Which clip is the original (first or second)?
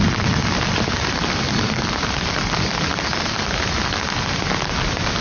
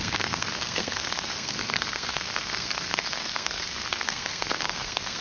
first